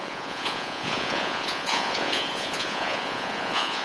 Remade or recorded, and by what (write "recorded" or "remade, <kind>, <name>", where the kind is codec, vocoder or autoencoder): remade, vocoder, Vocos